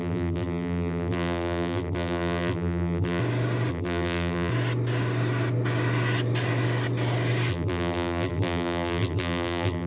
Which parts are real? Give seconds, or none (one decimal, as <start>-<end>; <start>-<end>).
3.2-3.7; 4.5-7.5